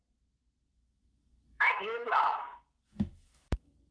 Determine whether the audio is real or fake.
fake